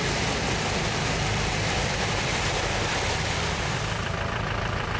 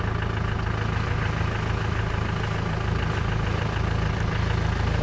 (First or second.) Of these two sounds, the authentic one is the second